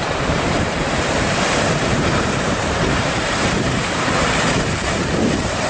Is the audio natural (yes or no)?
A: no